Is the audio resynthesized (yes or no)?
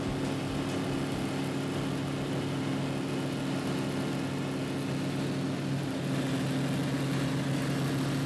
no